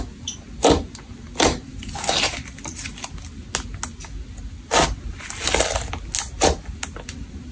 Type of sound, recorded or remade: recorded